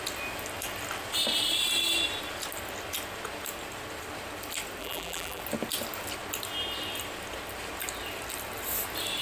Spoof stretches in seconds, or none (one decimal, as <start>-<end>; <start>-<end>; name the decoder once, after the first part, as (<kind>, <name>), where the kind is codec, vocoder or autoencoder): 4.8-5.4 (vocoder, BigVGAN v2)